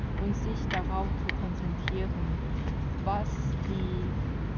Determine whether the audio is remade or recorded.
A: recorded